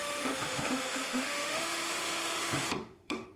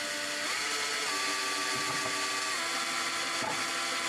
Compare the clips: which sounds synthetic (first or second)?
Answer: first